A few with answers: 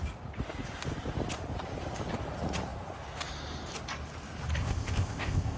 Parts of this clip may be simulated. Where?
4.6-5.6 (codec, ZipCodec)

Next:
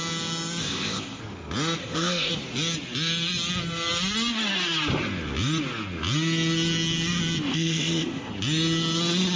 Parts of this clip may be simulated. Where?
0.6-1.2 (codec, ZipCodec); 1.8-2.3; 7.5-8.3